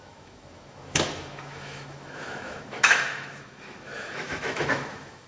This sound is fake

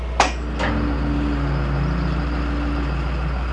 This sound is real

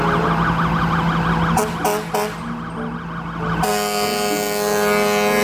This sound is real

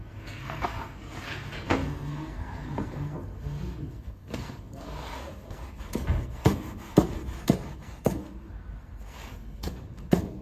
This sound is fake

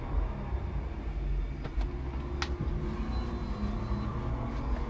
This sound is real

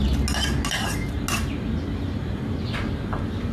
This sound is real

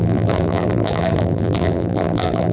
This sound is fake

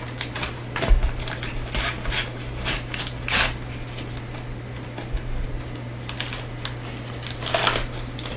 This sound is real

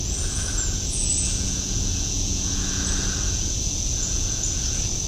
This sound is fake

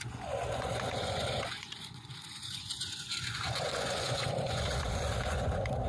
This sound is fake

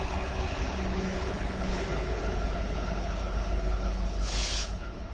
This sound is fake